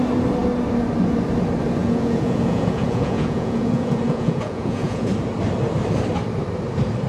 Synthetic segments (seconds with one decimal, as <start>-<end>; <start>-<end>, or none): 1.8-5.1